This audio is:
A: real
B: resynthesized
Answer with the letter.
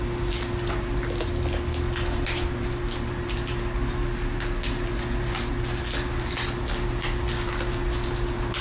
A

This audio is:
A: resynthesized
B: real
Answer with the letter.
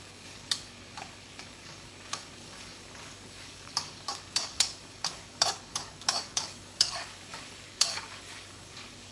A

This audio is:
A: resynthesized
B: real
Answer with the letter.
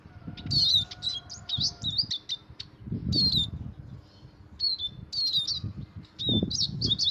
B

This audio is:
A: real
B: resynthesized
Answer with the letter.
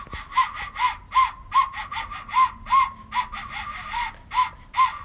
A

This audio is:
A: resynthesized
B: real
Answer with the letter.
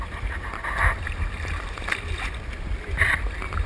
A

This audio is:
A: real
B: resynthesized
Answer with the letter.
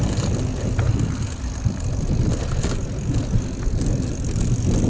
A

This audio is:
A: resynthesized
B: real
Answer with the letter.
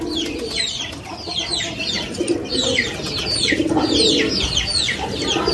A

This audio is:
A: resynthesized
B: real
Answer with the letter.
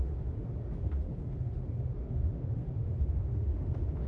A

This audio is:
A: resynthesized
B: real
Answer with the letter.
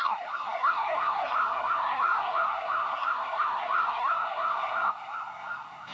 A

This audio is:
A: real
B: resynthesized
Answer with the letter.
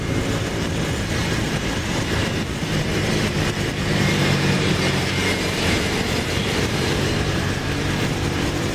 B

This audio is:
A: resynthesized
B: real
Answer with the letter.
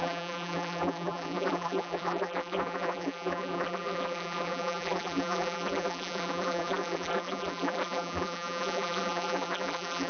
A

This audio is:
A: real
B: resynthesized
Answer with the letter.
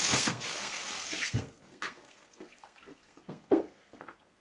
B